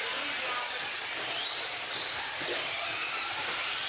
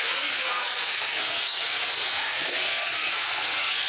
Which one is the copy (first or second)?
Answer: second